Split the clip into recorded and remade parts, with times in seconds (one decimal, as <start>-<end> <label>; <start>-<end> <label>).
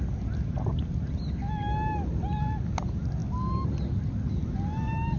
0.0-5.2 recorded